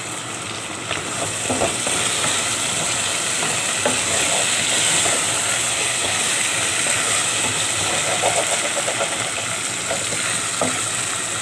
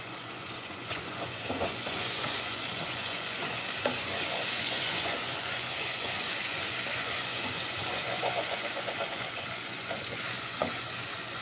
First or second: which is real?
first